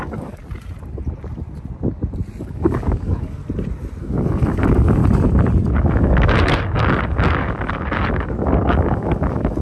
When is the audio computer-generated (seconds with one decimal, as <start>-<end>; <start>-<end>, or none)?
0.0-0.4; 2.4-3.4; 4.0-5.0; 5.7-9.6